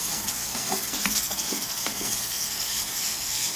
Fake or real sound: fake